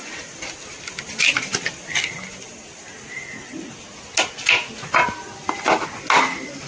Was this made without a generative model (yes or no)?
yes